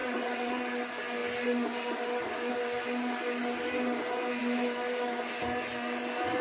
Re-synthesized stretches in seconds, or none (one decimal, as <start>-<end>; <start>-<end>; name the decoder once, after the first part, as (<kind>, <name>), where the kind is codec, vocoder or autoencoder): 0.0-0.5 (vocoder, WaveNeXt)